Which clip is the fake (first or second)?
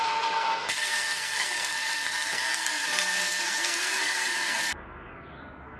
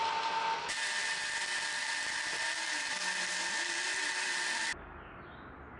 first